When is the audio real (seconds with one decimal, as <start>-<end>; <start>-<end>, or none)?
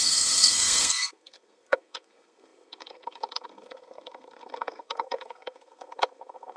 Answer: none